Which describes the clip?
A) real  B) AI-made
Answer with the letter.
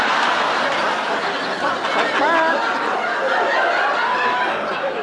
A